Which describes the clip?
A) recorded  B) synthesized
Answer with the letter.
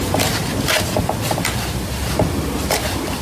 A